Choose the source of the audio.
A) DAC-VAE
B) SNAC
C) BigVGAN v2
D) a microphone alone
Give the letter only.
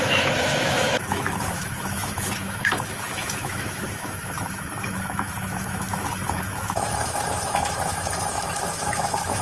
A